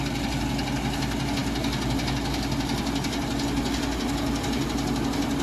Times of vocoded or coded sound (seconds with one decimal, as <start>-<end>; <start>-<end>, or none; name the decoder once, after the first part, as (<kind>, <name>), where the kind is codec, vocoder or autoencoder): none

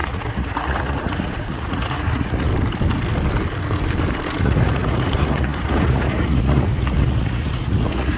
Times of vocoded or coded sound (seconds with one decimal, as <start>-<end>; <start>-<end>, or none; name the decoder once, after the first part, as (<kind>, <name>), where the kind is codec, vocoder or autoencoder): 0.0-2.5 (vocoder, Vocos); 4.4-8.2

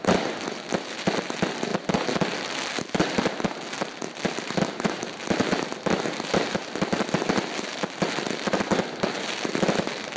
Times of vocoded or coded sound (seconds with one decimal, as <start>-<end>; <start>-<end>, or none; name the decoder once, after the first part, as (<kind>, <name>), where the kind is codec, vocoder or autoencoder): none

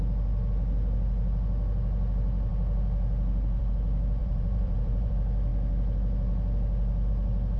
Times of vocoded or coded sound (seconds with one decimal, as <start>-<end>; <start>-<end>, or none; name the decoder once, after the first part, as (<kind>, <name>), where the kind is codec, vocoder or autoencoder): 4.2-5.1 (vocoder, BigVGAN v2)

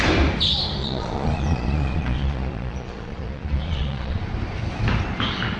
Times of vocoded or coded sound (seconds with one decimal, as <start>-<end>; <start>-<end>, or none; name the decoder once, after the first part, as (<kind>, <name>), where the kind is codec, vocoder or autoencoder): 0.8-4.2 (vocoder, Vocos)

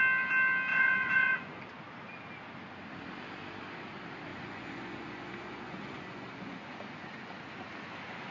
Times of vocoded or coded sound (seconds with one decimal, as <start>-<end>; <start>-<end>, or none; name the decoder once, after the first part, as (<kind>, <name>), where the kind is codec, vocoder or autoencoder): 0.7-1.6 (vocoder, Vocos); 4.3-7.4